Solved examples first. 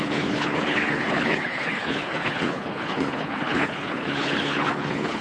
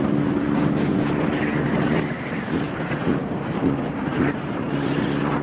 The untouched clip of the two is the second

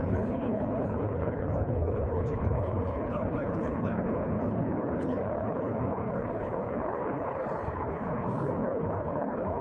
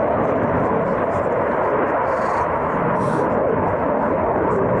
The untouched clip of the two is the second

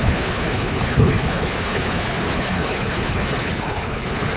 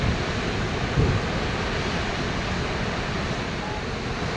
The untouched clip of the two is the second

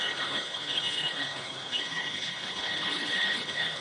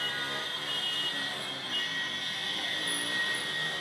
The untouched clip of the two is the second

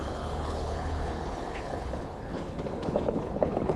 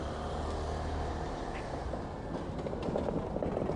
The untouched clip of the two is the second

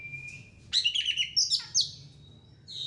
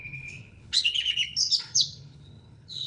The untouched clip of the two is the first